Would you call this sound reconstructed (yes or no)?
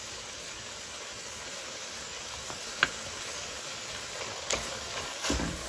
yes